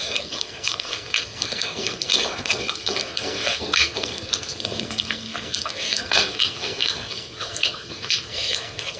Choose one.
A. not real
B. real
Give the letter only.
A